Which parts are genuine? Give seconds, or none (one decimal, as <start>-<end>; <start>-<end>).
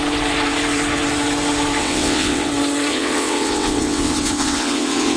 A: 0.0-1.8; 2.5-2.9